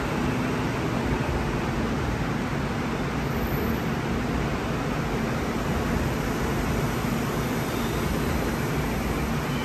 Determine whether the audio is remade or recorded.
recorded